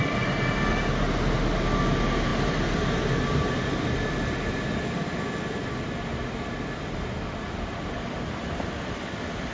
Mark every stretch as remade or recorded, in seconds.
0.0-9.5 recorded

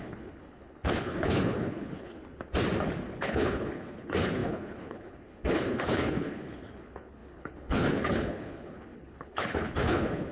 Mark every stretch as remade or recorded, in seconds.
0.0-2.2 remade; 2.2-3.1 recorded; 3.1-10.3 remade

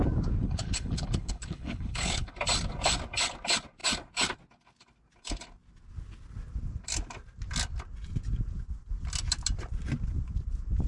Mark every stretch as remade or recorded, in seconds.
0.0-0.4 recorded; 0.4-2.3 remade; 2.3-10.9 recorded

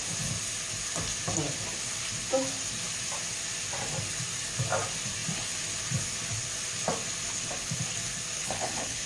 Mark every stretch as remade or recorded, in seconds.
0.0-8.4 recorded; 8.4-9.1 remade

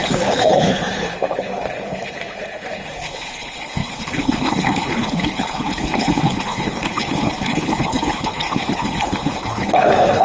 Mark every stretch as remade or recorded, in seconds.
0.0-10.2 remade